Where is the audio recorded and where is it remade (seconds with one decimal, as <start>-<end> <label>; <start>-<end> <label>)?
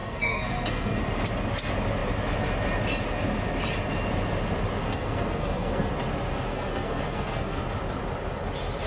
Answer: 0.0-1.0 remade; 1.0-4.8 recorded; 4.8-5.9 remade; 5.9-6.5 recorded; 6.5-7.6 remade; 7.6-8.9 recorded